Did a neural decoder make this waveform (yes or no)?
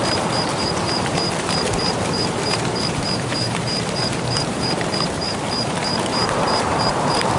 yes